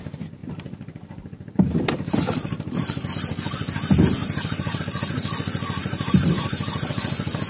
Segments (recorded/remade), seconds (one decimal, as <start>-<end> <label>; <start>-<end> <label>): 0.0-0.4 recorded; 0.4-3.1 remade; 3.1-4.2 recorded; 4.2-4.8 remade; 4.8-5.8 recorded; 5.8-7.0 remade; 7.0-7.5 recorded